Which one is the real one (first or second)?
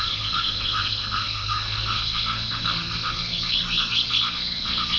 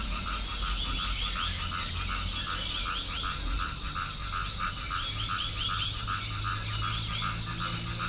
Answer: second